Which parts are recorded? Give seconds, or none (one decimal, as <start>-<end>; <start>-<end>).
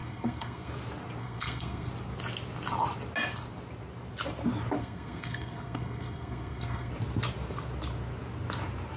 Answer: 0.7-1.2; 1.9-4.8; 6.9-9.0